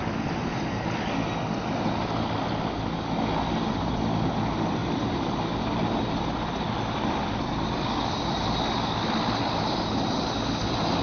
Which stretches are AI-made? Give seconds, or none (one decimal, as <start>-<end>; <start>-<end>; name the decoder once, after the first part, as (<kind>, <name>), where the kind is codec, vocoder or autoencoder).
none